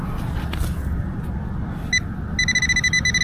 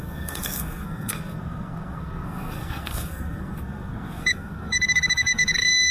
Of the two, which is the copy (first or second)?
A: second